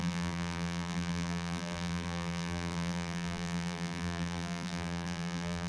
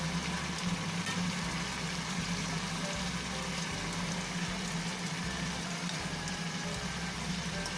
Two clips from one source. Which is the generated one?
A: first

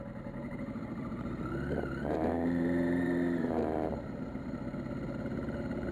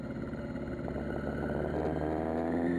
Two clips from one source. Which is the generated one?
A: first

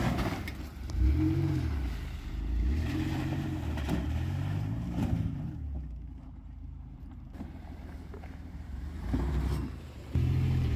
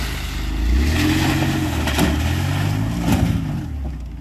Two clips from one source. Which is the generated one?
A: first